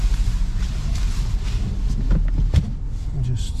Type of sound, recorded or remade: recorded